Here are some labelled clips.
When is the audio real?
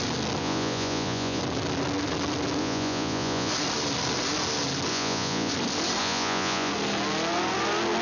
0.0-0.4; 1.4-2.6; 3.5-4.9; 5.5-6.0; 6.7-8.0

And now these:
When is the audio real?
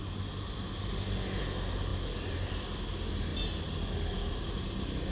0.0-5.1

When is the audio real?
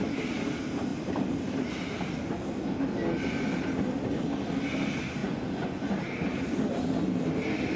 0.0-5.2; 5.9-7.8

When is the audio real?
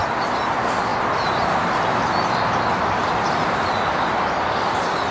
0.0-5.1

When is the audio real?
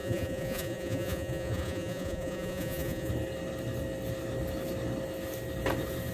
3.1-6.1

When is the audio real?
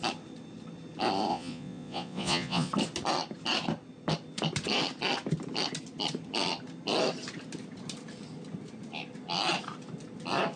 0.0-1.3; 2.7-10.6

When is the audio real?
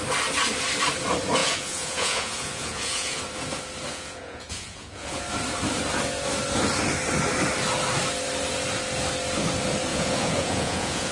0.0-1.4; 3.2-3.9; 5.2-9.9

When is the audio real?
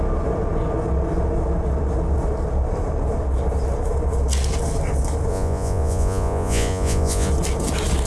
0.0-5.3; 7.3-8.1